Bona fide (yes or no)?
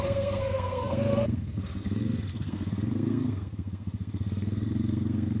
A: no